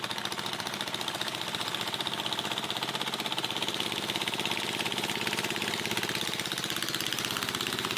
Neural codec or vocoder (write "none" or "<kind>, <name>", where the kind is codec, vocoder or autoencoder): none